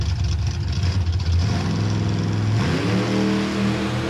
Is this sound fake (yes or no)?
no